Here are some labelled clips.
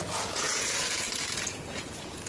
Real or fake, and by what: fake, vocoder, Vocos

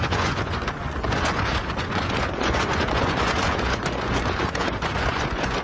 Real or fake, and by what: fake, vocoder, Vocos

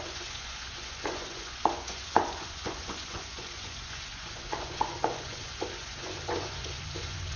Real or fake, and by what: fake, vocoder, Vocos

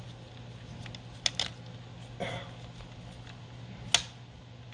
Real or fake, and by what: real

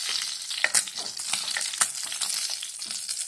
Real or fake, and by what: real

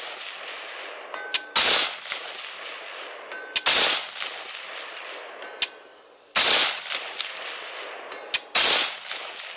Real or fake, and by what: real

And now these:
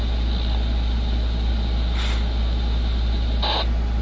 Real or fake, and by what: real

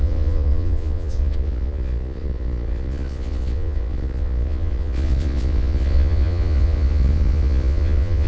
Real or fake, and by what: fake, vocoder, Vocos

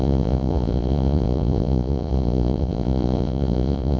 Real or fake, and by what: fake, vocoder, Vocos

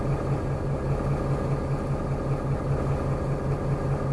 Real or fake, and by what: real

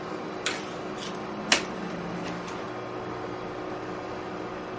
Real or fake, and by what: real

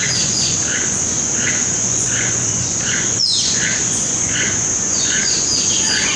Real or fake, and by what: fake, vocoder, Vocos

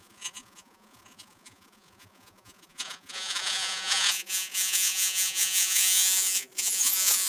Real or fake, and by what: fake, vocoder, Vocos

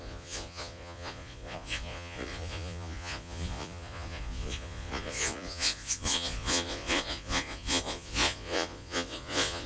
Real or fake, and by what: fake, vocoder, Vocos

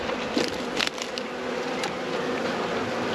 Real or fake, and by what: real